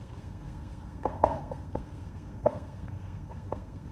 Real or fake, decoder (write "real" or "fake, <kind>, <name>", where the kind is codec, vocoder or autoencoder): fake, codec, SNAC